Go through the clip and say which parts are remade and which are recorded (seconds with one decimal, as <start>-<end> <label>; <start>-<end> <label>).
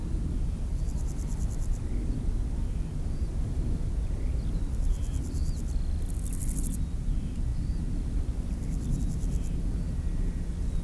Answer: 0.0-10.8 recorded